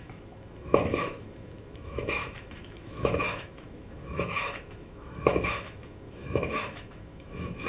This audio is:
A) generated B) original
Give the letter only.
A